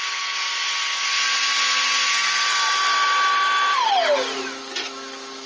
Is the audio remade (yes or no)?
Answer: no